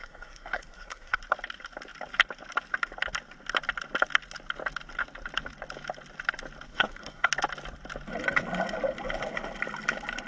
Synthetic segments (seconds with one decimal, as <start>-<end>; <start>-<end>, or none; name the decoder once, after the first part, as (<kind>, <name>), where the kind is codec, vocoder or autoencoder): 0.0-1.2 (codec, SNAC); 6.7-7.3